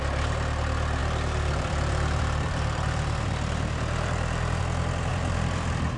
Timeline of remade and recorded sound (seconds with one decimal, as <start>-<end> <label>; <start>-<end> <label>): 0.0-1.0 recorded; 1.0-4.6 remade; 4.6-5.1 recorded; 5.1-6.0 remade